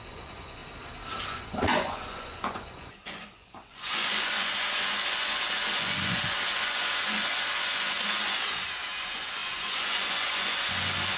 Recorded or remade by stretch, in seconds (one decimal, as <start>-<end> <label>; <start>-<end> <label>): 0.0-0.6 remade; 0.6-1.2 recorded; 1.2-11.2 remade